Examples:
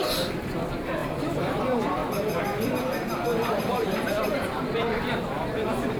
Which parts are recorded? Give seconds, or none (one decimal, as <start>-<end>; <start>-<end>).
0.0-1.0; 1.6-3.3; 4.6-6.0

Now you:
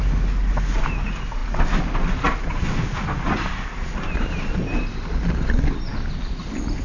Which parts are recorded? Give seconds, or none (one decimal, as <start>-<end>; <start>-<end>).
0.0-6.8

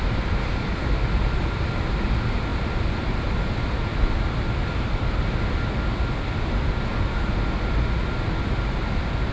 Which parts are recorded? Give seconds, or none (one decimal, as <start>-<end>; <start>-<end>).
0.0-9.3

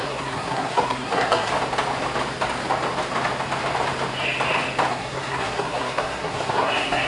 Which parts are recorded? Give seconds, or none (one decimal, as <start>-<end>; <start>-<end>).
1.5-4.9

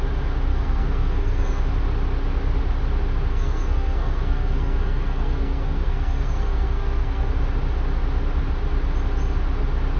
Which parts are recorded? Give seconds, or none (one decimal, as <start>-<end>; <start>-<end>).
0.0-0.5; 1.6-3.3; 7.3-10.0

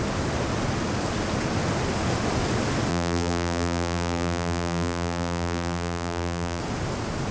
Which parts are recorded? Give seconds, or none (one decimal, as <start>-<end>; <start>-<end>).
0.0-2.9; 6.6-7.3

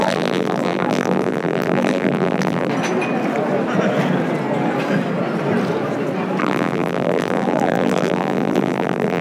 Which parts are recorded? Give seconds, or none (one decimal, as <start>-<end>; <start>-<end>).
2.7-6.4